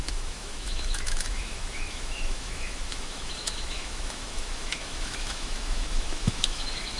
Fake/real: fake